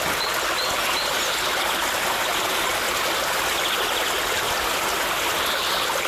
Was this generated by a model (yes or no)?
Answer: no